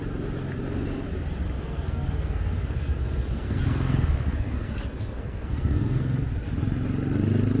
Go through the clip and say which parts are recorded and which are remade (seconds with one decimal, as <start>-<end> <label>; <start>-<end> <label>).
0.0-1.6 recorded; 1.6-6.2 remade; 6.2-7.6 recorded